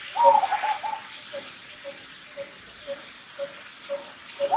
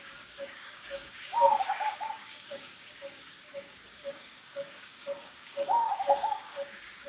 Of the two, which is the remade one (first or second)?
second